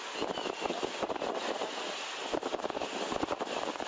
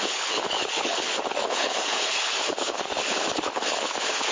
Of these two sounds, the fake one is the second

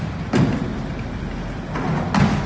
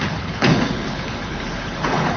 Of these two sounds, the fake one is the second